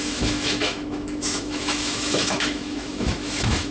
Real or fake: fake